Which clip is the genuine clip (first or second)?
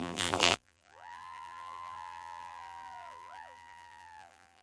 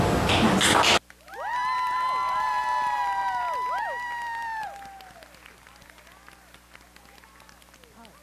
second